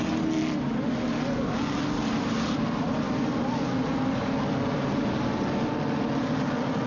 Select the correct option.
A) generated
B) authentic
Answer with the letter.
B